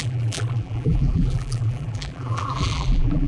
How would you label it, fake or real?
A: fake